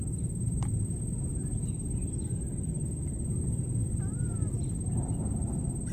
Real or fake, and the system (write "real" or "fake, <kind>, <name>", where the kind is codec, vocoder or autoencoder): real